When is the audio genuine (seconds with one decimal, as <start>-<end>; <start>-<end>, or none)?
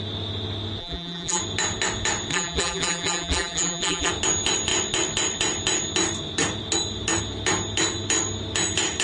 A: 0.0-0.8; 1.4-2.3; 4.1-9.0